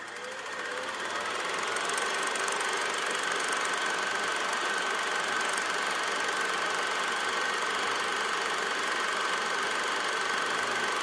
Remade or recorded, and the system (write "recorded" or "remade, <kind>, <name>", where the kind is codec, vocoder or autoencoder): recorded